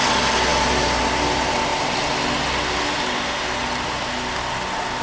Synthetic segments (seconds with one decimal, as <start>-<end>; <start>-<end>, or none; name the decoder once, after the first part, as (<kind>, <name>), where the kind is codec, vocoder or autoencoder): none